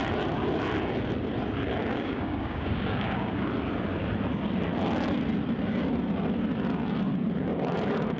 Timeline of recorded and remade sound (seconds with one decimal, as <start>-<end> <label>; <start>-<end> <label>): 0.0-1.8 recorded; 1.8-3.3 remade; 3.3-8.2 recorded